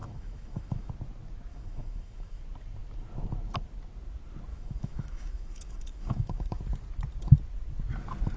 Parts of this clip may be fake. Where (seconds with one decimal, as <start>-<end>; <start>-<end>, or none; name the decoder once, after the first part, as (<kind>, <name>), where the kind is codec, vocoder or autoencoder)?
0.0-0.9 (autoencoder, DAC-VAE); 1.5-2.4; 4.5-6.6